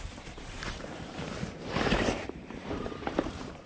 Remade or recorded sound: remade